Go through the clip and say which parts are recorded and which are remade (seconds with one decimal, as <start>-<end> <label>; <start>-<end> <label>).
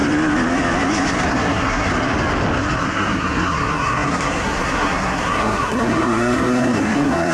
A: 0.0-1.3 recorded; 1.3-1.9 remade; 1.9-2.8 recorded; 2.8-7.3 remade